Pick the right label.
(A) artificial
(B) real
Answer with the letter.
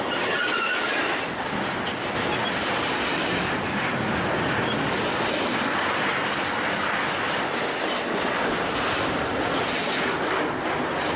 B